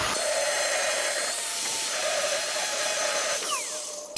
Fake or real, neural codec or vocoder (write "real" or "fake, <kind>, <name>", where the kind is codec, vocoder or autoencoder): fake, vocoder, BigVGAN v2